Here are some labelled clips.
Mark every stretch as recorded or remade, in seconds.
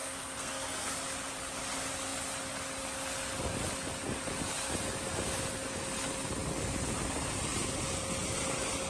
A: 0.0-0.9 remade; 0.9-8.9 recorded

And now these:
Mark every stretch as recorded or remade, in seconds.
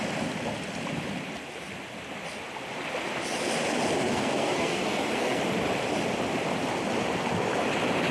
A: 0.0-4.1 recorded; 4.1-5.4 remade; 5.4-8.1 recorded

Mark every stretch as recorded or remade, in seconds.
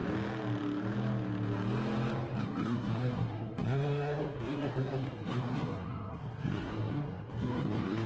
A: 0.0-2.4 recorded; 2.4-8.1 remade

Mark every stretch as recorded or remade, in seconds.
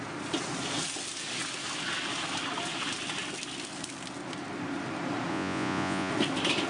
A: 0.0-5.3 recorded; 5.3-6.1 remade; 6.1-6.7 recorded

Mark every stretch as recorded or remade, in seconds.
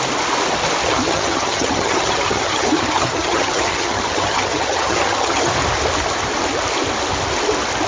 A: 0.0-0.8 recorded; 0.8-5.5 remade; 5.5-7.9 recorded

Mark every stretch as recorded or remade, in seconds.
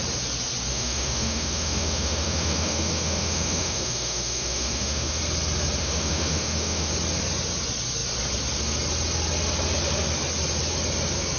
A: 0.0-0.7 recorded; 0.7-5.2 remade; 5.2-5.8 recorded; 5.8-6.9 remade; 6.9-11.4 recorded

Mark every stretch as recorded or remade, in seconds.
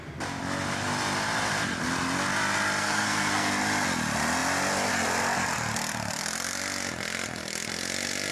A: 0.0-2.8 recorded; 2.8-3.5 remade; 3.5-8.3 recorded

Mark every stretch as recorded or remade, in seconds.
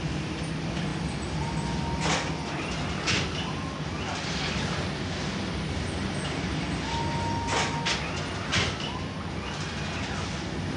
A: 0.0-10.8 recorded